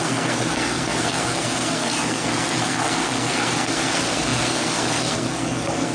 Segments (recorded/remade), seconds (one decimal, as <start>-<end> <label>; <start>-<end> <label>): 0.0-5.9 remade